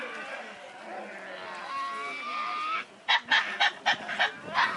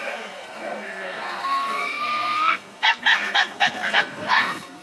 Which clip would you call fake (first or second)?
second